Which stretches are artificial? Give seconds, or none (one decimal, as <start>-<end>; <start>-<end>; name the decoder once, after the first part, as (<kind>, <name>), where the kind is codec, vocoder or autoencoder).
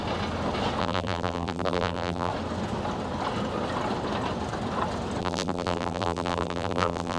0.8-2.3 (vocoder, BigVGAN v2); 5.2-7.2